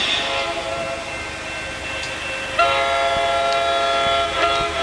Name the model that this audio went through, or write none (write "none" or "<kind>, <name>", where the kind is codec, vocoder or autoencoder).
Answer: none